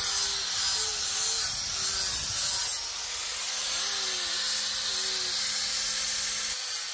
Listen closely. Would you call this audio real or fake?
real